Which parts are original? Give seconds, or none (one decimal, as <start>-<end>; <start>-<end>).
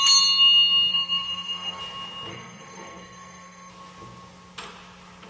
0.0-0.9; 1.8-2.3; 3.7-5.3